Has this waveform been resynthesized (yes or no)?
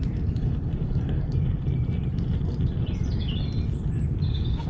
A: no